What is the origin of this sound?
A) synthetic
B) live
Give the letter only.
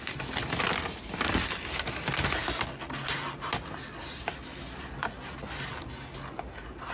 B